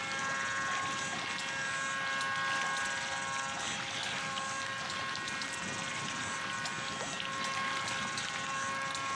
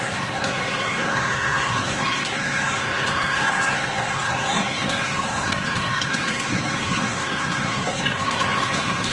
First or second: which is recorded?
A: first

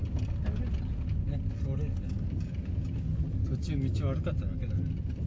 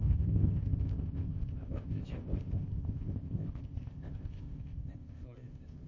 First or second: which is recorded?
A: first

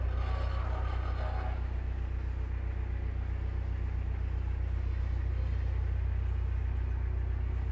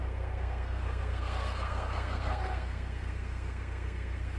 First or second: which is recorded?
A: first